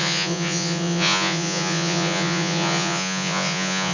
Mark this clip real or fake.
fake